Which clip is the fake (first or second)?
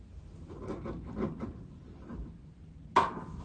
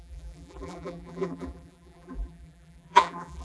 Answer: second